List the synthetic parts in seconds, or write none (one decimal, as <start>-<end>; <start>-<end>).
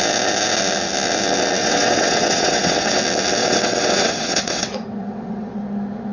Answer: 1.6-3.0; 3.4-5.6